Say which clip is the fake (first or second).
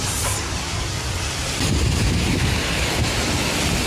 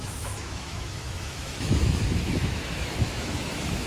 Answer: second